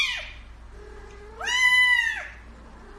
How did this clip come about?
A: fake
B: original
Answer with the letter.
B